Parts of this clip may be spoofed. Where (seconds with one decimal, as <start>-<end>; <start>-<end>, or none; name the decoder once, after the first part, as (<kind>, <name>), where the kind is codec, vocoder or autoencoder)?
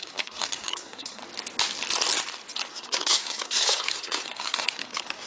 0.0-1.2 (codec, SNAC); 2.7-5.3